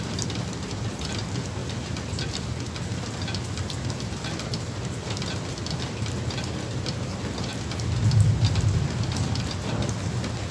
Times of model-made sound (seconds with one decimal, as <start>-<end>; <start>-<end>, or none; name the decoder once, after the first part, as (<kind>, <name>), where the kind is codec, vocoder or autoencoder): none